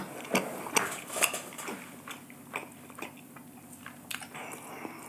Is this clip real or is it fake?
real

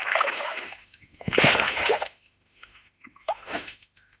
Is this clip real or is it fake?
fake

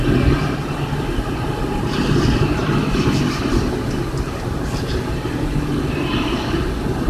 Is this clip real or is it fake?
real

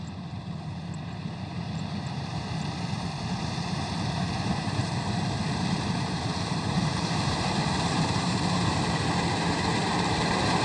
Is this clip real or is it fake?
fake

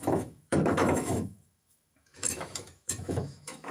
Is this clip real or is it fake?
fake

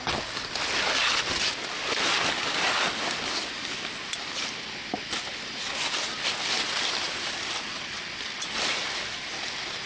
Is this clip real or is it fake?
real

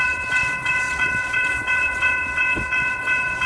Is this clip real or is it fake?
fake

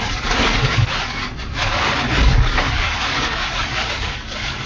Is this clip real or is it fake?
fake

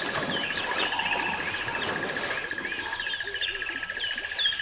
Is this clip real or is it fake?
real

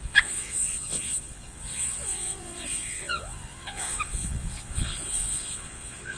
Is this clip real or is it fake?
fake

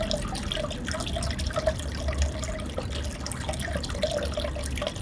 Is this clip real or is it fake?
real